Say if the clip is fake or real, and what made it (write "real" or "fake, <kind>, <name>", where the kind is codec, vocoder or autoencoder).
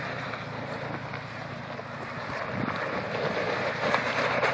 real